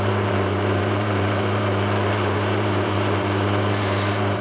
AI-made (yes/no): yes